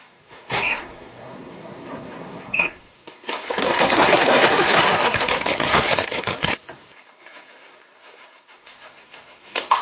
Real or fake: fake